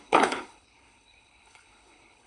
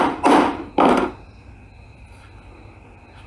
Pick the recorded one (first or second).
second